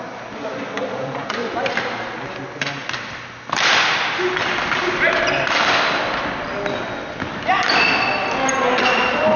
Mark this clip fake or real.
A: real